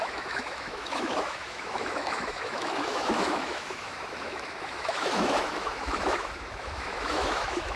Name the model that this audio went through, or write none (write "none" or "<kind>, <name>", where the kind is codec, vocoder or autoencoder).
autoencoder, DAC-VAE